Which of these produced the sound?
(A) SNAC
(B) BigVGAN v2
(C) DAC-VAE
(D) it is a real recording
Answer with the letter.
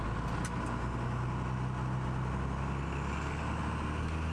D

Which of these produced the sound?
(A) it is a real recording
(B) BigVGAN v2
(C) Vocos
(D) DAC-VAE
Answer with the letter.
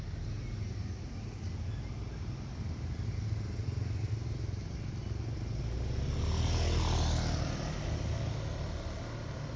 A